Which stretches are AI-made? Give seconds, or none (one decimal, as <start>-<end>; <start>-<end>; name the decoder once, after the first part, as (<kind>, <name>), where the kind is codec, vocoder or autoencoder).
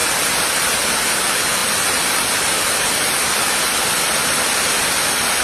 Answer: 0.0-0.5 (vocoder, BigVGAN v2); 1.6-4.8